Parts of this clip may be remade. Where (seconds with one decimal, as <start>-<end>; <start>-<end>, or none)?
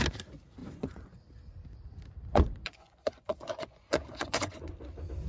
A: 0.6-1.2; 2.3-4.7